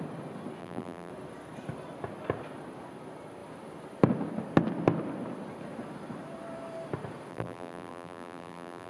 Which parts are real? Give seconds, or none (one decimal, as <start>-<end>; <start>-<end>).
0.0-0.6; 1.1-7.3